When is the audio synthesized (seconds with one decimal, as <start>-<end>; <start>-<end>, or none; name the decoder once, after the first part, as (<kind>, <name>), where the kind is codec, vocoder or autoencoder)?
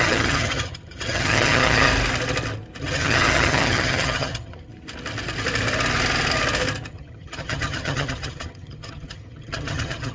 0.0-1.9 (vocoder, HiFi-GAN); 2.8-4.7; 6.9-10.1